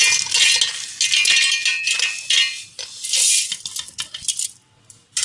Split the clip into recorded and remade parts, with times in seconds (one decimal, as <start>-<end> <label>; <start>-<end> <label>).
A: 0.0-5.2 recorded